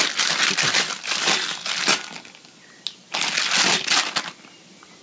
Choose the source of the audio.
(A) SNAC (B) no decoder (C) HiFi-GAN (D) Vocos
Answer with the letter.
B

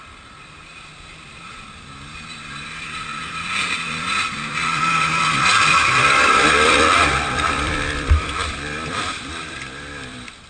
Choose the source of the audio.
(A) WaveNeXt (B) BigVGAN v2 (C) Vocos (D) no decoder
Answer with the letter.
B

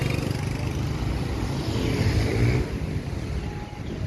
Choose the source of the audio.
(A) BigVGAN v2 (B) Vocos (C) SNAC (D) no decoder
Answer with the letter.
D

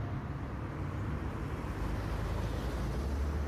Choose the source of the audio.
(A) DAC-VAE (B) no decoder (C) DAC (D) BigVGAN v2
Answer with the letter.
B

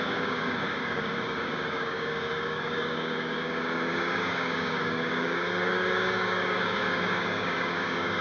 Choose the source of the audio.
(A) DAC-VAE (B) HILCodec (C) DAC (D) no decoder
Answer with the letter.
C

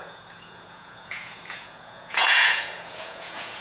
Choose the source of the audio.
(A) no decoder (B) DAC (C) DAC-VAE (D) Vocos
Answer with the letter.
D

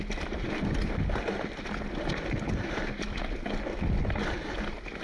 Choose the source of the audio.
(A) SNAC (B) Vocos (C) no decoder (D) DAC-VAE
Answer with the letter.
C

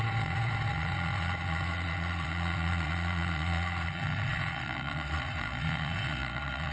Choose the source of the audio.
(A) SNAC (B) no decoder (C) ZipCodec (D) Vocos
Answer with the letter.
D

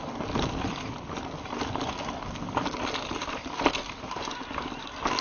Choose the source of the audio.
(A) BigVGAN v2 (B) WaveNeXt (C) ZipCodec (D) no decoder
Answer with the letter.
D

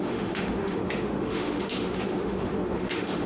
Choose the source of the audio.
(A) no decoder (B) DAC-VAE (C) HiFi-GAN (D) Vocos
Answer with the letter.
B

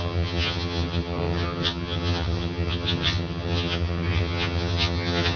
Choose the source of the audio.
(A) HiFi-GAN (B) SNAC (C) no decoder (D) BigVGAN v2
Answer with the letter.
A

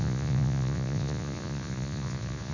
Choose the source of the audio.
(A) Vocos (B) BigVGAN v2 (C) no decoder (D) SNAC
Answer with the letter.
A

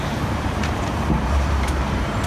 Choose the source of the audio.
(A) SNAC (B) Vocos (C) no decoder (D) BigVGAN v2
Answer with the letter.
D